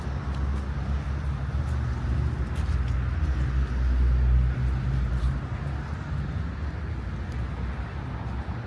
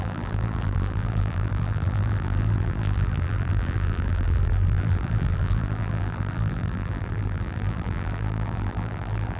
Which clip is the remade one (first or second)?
second